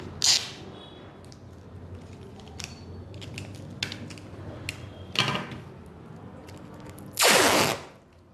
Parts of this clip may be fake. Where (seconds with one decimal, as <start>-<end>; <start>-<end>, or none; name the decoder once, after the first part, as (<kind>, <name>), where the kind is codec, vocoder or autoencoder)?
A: none